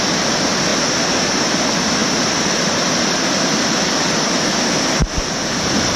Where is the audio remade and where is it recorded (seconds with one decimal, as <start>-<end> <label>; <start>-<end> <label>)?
0.0-6.0 recorded